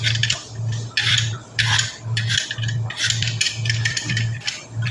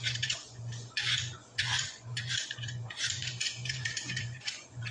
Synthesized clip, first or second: second